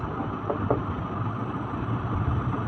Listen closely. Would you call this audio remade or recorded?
recorded